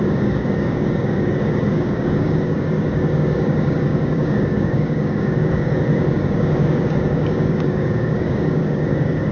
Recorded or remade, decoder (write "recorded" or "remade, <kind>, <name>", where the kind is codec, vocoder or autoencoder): remade, codec, DAC